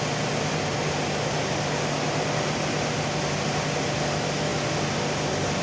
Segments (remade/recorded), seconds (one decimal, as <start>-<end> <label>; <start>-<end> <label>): 0.0-5.6 recorded